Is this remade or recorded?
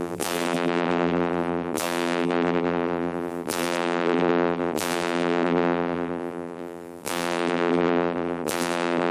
remade